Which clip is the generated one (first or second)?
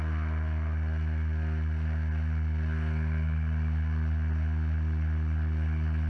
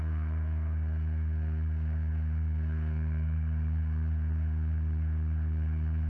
second